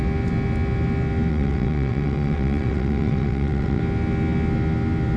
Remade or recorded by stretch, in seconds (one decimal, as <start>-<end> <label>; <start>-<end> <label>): 0.0-1.3 recorded; 1.3-3.8 remade; 3.8-5.2 recorded